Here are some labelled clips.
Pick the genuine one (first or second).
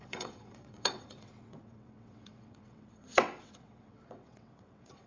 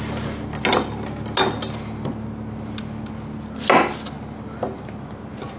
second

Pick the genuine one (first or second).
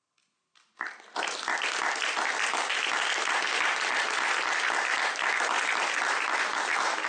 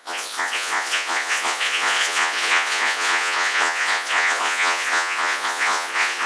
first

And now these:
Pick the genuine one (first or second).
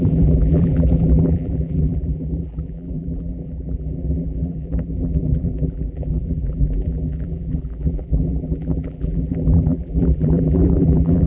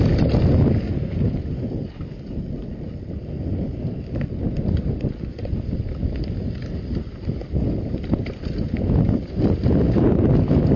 second